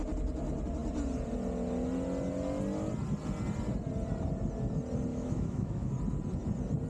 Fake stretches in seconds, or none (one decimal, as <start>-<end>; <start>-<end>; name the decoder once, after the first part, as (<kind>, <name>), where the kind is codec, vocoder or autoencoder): 5.1-5.9 (autoencoder, DAC-VAE)